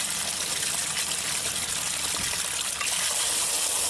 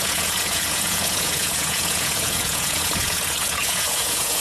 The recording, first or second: first